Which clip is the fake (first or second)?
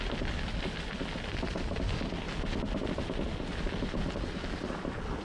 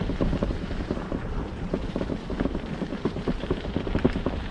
second